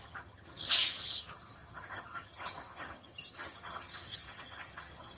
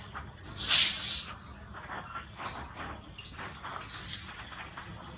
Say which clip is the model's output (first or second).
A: first